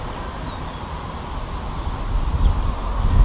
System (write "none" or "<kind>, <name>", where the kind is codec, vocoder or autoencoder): none